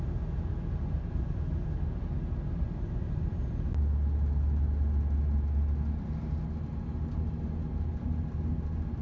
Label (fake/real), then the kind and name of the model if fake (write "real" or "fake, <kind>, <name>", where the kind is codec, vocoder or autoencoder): real